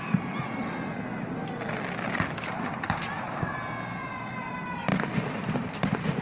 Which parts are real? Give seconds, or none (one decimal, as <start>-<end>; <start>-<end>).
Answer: 0.0-6.2